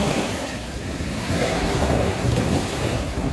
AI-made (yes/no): yes